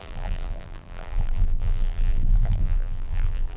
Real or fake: fake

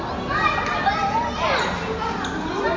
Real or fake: real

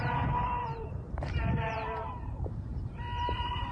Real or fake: fake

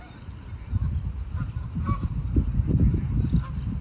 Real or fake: real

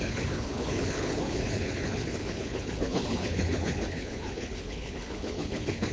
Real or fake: fake